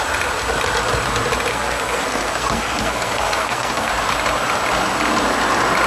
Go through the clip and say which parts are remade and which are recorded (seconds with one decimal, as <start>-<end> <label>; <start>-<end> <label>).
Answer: 0.0-1.5 recorded; 1.5-3.9 remade; 3.9-5.9 recorded